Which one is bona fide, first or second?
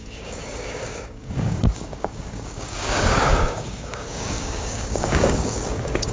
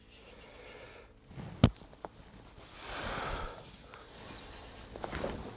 second